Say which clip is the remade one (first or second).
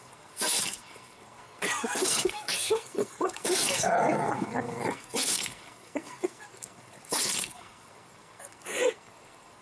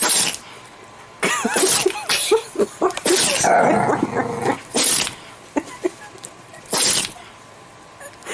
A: first